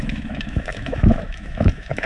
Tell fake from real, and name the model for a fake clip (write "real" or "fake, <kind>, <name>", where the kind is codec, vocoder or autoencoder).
fake, autoencoder, DAC-VAE